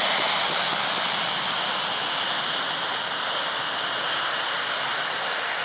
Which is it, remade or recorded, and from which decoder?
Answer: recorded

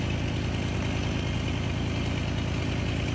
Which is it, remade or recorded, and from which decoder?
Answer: recorded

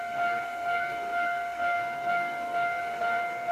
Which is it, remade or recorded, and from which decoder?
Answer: remade, codec, SNAC